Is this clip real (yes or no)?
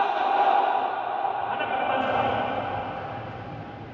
no